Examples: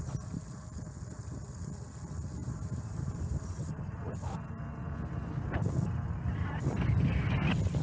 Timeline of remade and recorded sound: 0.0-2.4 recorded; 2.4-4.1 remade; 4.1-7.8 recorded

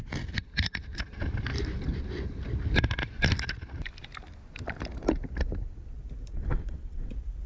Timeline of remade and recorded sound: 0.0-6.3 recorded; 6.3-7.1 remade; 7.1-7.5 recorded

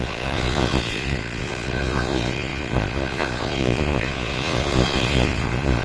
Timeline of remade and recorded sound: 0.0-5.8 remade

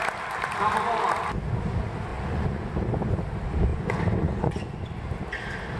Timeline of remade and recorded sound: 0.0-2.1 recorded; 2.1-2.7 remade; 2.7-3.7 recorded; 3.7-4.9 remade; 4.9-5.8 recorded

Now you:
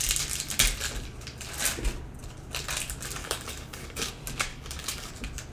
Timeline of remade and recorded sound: 0.0-3.2 recorded; 3.2-4.1 remade; 4.1-4.5 recorded; 4.5-5.1 remade; 5.1-5.5 recorded

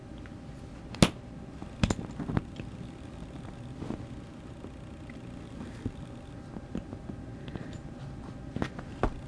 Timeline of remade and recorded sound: 0.0-9.3 recorded